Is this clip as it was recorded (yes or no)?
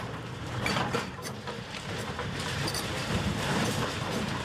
no